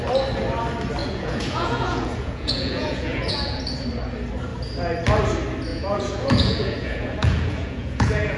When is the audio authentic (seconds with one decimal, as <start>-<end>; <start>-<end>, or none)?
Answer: 0.0-1.0; 3.6-5.7